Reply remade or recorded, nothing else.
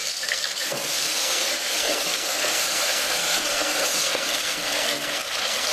remade